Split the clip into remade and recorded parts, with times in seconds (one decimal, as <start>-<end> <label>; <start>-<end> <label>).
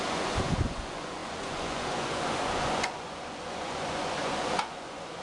0.0-5.2 remade